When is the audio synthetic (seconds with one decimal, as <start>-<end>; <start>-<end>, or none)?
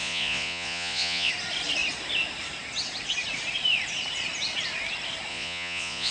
0.0-1.3; 5.3-6.1